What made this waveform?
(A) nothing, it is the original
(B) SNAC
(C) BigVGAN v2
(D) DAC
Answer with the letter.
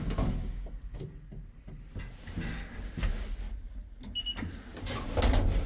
A